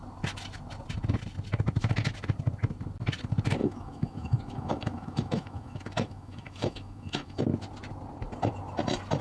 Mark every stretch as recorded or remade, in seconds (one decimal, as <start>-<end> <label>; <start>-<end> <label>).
0.0-3.6 recorded; 3.6-7.4 remade; 7.4-9.2 recorded